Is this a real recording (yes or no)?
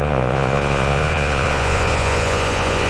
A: no